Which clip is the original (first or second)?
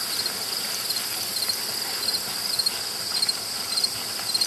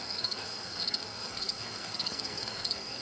first